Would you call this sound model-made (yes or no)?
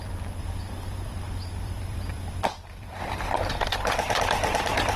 yes